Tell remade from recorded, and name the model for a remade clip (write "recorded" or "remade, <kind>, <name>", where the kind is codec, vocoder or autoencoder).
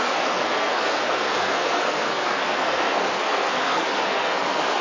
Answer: remade, codec, SNAC